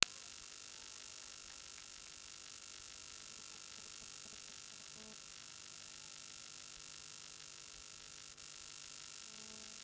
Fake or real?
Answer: real